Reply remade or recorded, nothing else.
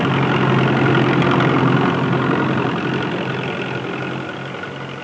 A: recorded